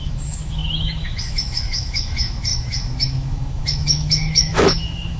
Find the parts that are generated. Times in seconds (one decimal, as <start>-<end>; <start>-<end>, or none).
0.0-5.2